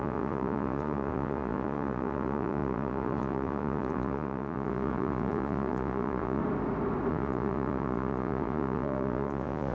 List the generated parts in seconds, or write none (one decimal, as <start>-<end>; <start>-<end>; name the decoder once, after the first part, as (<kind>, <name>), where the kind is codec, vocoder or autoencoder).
0.0-6.4 (vocoder, Vocos); 7.1-9.7

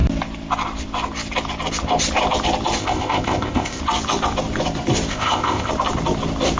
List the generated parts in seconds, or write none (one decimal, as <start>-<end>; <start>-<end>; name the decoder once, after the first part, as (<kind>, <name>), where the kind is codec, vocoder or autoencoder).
2.8-3.8 (codec, ZipCodec); 5.1-5.7

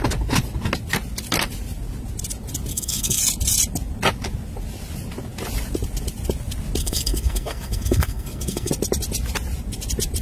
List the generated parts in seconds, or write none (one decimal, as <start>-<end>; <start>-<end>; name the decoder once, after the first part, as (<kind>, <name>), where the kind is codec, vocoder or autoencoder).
2.7-3.2 (codec, SNAC); 6.8-8.7

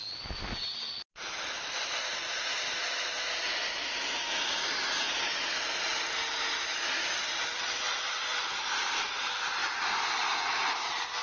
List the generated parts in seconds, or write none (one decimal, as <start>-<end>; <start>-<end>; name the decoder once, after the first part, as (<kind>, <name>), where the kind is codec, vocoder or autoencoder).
none

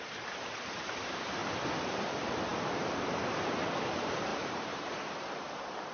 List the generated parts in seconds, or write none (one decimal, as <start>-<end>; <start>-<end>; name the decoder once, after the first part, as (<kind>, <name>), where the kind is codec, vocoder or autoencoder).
0.0-1.4 (vocoder, BigVGAN v2); 2.0-5.9